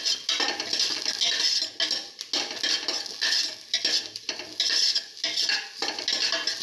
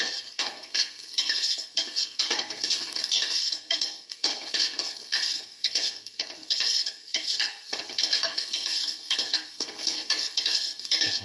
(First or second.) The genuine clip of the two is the first